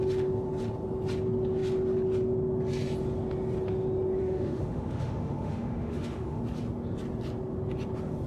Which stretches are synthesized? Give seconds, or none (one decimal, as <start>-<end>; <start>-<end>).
4.2-6.4

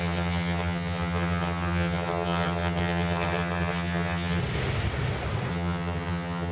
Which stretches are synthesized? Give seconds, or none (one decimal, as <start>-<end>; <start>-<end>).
0.0-4.4; 5.5-6.5

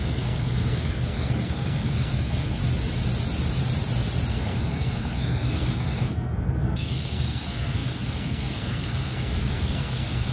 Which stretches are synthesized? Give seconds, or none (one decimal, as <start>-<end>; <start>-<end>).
0.0-2.6; 4.3-10.3

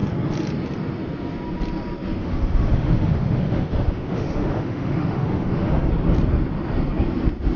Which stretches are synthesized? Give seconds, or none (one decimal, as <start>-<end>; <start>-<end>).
2.2-5.9